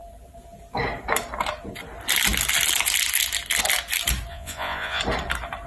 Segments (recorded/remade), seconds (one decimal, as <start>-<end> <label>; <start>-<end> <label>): 0.0-4.3 recorded; 4.3-5.0 remade; 5.0-5.7 recorded